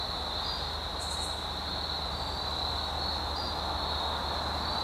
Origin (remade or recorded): recorded